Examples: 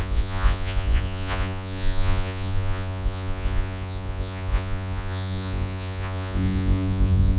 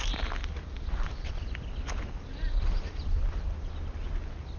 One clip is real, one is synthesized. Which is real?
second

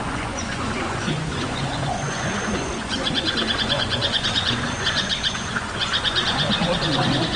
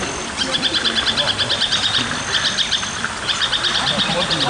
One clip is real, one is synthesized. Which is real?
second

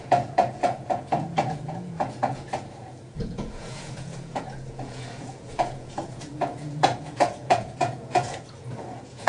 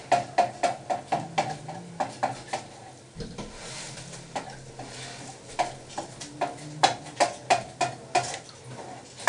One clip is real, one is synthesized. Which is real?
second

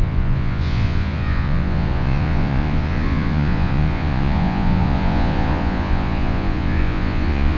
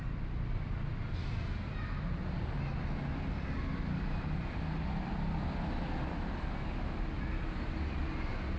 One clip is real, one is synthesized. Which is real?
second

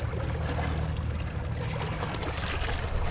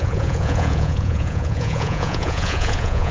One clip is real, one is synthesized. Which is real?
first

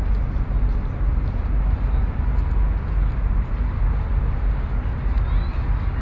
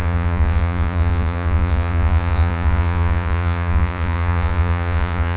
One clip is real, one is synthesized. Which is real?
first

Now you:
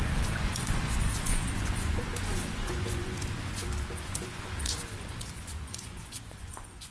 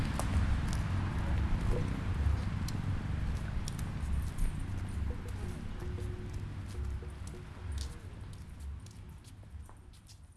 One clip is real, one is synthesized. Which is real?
second